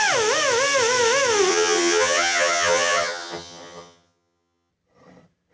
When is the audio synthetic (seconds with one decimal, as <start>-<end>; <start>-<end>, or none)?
1.5-4.7